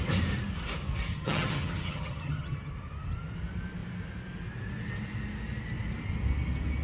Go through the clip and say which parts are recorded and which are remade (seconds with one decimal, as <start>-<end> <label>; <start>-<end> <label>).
0.0-1.1 recorded; 1.1-2.7 remade; 2.7-6.8 recorded